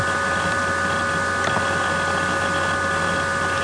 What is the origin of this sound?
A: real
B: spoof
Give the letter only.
A